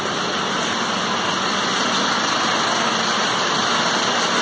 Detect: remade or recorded recorded